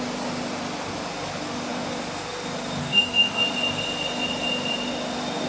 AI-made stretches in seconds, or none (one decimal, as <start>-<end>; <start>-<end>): 2.8-3.4